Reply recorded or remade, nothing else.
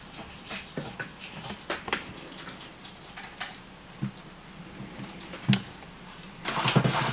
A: recorded